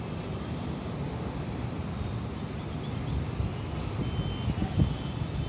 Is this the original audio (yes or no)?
yes